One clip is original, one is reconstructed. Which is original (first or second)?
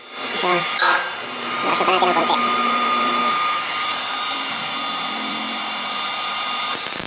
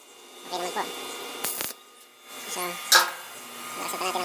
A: second